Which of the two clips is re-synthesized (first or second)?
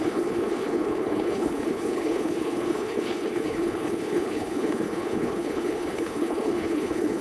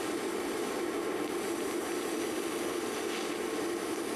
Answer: first